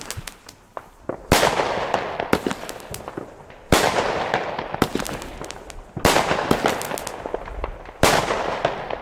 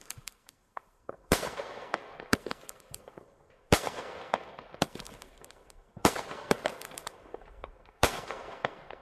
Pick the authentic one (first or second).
first